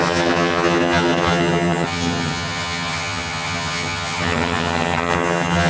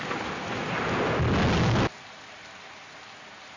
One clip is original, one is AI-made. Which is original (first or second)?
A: second